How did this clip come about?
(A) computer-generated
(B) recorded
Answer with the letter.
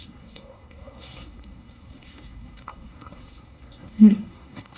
A